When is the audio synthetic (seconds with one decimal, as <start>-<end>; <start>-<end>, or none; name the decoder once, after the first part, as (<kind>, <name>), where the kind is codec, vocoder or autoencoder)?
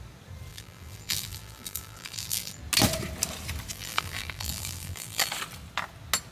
0.5-2.6 (vocoder, BigVGAN v2); 3.7-5.3